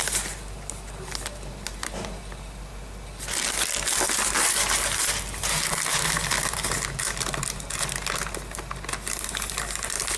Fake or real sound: real